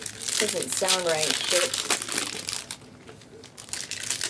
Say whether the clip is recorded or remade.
recorded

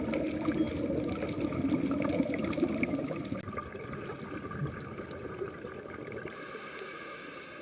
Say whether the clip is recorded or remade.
recorded